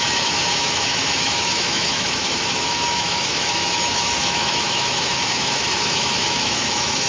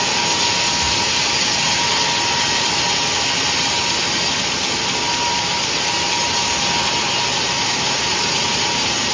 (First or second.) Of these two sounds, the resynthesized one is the first